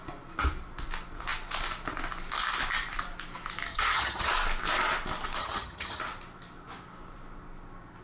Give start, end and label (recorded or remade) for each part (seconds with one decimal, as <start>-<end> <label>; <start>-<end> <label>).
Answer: 0.0-3.7 recorded; 3.7-4.3 remade; 4.3-5.4 recorded; 5.4-6.0 remade; 6.0-8.0 recorded

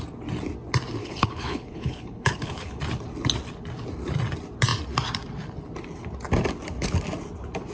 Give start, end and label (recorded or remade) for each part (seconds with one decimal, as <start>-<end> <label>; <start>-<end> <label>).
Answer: 0.0-1.0 recorded; 1.0-2.8 remade; 2.8-7.7 recorded